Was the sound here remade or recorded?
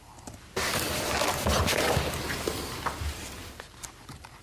recorded